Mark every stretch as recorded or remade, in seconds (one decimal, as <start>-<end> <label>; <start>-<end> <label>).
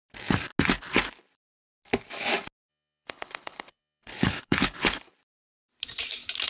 0.0-2.7 recorded; 2.7-5.1 remade; 5.1-6.5 recorded